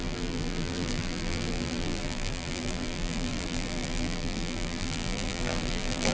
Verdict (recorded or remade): remade